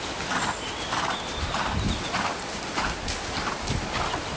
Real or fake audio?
real